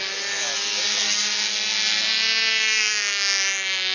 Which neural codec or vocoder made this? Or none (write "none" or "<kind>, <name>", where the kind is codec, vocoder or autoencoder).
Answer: none